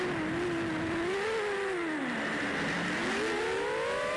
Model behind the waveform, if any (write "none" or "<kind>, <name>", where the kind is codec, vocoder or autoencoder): none